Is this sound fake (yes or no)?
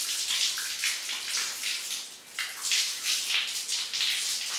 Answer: no